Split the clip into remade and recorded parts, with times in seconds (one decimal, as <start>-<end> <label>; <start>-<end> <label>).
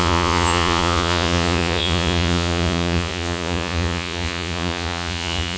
0.0-5.6 remade